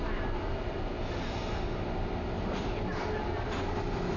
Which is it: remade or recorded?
recorded